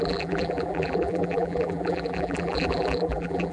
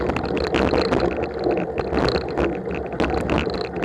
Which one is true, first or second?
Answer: second